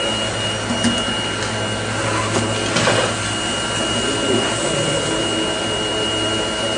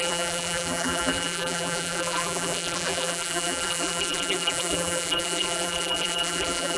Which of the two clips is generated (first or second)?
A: second